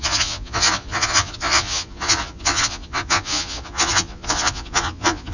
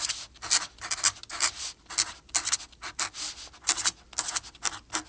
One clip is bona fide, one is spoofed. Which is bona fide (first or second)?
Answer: second